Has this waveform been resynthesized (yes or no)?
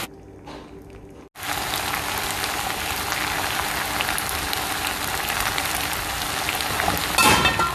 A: no